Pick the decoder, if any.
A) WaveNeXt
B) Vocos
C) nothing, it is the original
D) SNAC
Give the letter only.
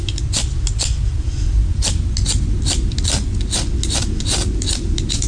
C